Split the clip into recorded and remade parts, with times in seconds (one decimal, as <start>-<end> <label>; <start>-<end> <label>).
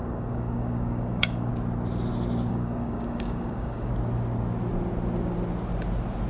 0.0-1.5 remade; 1.5-2.5 recorded; 2.5-3.9 remade; 3.9-6.3 recorded